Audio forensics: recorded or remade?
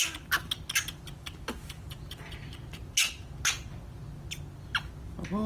recorded